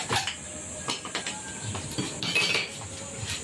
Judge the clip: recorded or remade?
recorded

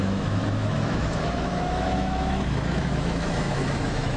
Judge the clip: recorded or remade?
remade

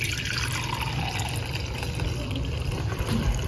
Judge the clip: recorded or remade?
recorded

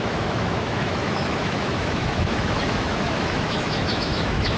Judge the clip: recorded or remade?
remade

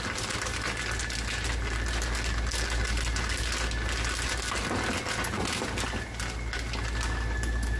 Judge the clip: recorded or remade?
recorded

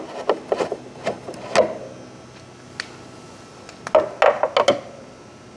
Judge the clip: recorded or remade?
recorded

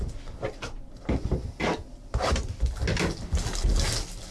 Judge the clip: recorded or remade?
recorded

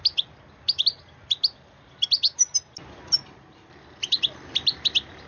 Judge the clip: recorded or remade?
recorded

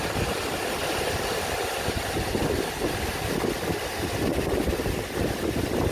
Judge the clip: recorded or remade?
recorded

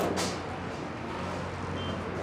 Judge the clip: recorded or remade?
recorded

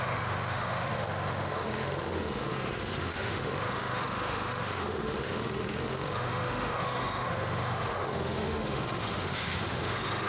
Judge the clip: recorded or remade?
remade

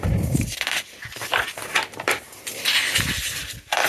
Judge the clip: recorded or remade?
recorded